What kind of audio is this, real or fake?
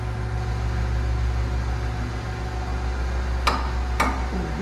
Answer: real